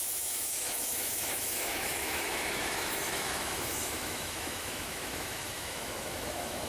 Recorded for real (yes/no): no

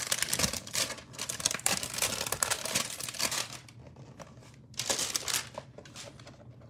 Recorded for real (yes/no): yes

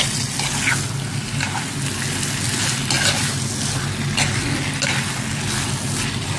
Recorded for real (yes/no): yes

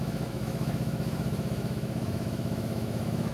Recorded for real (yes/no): no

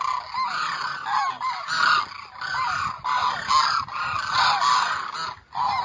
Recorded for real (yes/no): yes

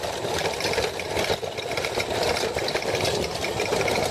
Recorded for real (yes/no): yes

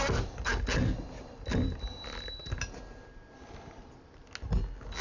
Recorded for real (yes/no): yes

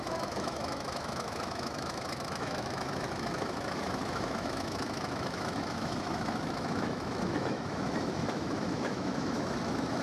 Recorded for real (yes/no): no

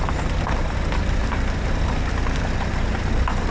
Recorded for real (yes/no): yes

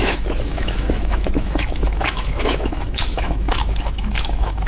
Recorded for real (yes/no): no